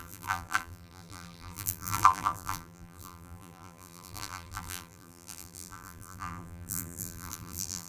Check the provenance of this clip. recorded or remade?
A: remade